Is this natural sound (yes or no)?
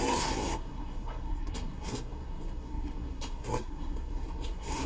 no